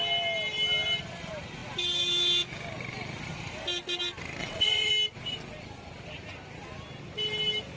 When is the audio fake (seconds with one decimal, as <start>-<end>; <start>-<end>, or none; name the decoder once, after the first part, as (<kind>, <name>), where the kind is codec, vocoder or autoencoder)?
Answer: 4.4-4.9 (vocoder, WaveNeXt)